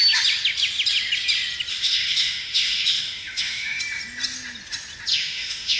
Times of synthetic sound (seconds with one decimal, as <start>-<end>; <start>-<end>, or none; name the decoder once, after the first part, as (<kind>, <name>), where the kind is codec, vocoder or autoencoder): 1.7-3.8 (autoencoder, DAC-VAE); 5.1-5.8